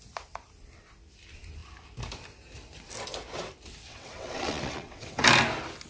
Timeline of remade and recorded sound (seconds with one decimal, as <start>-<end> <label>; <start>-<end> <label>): 0.0-3.9 recorded; 3.9-5.2 remade; 5.2-5.9 recorded